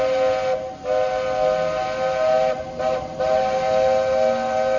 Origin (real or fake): real